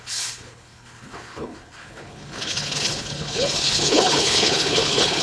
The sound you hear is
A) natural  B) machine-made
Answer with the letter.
B